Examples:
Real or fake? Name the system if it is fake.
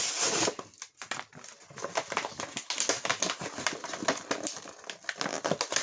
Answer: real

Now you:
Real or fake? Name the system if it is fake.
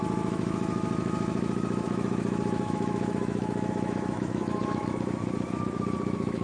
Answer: fake, autoencoder, DAC-VAE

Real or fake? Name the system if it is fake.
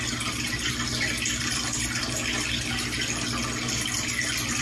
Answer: real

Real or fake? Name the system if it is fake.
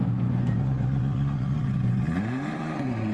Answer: fake, vocoder, Vocos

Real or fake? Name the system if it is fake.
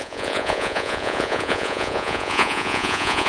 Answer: fake, vocoder, Vocos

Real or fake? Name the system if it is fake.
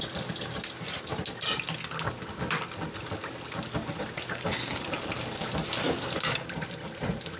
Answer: real